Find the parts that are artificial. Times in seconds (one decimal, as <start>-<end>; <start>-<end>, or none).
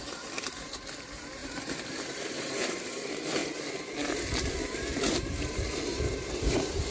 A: 0.0-3.4; 4.5-6.9